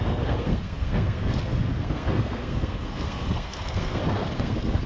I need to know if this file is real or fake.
fake